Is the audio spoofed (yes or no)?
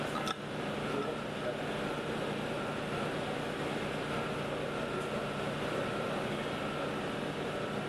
no